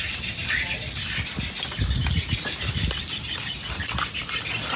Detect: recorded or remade recorded